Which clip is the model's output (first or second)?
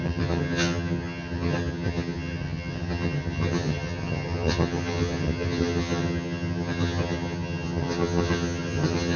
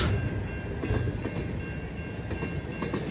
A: first